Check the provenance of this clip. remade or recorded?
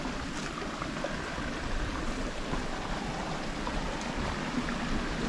recorded